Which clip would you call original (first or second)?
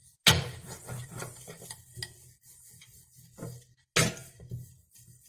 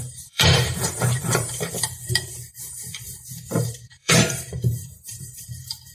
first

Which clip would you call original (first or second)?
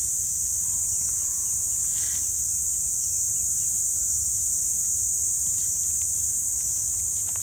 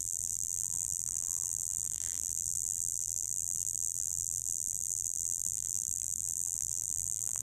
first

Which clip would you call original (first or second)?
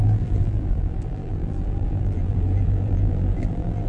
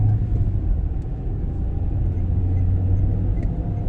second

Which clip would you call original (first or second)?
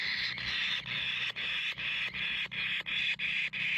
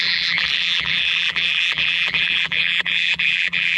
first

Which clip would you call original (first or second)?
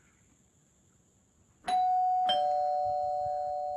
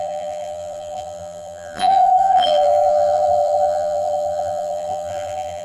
first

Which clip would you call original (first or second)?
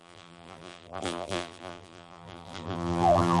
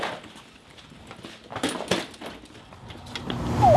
second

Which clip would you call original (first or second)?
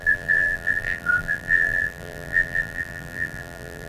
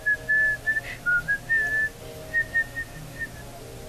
second